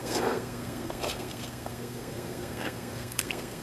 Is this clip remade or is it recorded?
remade